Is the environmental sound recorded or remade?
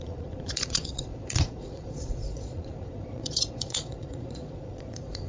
remade